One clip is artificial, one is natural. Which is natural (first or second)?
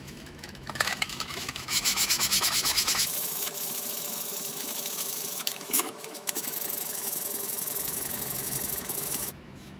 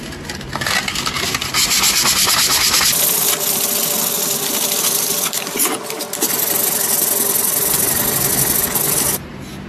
second